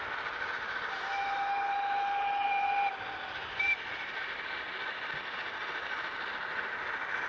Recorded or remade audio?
recorded